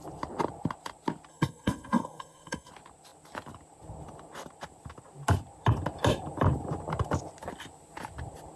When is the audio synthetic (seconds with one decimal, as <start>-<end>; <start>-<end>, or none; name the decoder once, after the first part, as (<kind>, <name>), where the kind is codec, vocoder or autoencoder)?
1.3-2.7 (codec, SNAC)

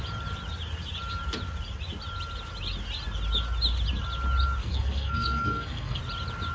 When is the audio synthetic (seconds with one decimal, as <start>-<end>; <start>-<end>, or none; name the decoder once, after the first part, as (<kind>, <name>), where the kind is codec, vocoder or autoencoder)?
4.6-6.0 (codec, SNAC)

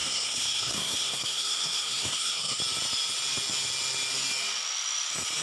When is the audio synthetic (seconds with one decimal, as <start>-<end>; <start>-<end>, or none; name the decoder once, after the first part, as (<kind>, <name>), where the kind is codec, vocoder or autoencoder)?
0.0-2.6 (codec, SNAC)

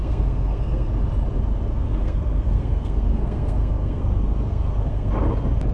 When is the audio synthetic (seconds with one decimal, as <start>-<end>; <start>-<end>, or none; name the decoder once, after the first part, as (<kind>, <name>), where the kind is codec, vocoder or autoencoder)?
0.0-0.9 (codec, SNAC); 1.7-5.1